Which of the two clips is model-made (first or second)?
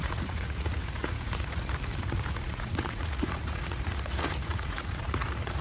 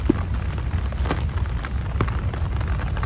first